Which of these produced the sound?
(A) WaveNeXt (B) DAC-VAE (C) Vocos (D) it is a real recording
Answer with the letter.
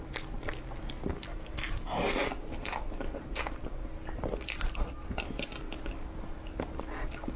D